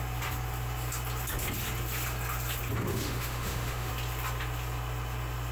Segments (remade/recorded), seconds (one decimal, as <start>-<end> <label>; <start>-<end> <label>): 0.0-2.9 recorded; 2.9-3.9 remade; 3.9-5.5 recorded